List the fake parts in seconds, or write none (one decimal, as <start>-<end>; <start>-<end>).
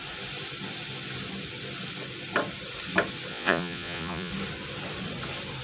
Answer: 3.3-4.3